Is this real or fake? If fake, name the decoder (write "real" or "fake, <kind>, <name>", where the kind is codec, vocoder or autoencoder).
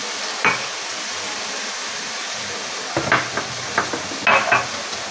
real